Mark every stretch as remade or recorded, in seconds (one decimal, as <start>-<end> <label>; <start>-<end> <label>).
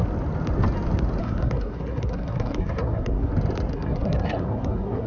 0.0-1.2 recorded; 1.2-3.3 remade; 3.3-3.7 recorded; 3.7-5.1 remade